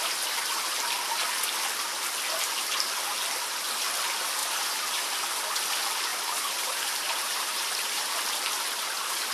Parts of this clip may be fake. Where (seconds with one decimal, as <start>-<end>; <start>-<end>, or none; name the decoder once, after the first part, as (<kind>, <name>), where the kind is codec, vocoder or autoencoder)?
4.4-5.0 (vocoder, BigVGAN v2); 6.1-8.3